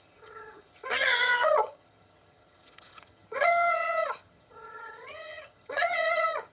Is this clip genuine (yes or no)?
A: no